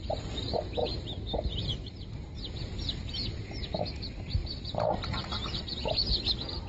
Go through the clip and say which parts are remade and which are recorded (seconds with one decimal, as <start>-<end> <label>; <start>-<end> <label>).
0.0-6.7 recorded